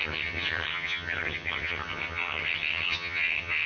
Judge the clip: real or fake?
fake